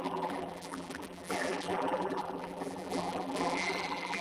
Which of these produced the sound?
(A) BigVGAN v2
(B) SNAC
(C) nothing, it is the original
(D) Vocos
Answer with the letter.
A